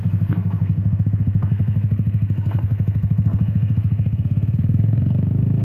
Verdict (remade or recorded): remade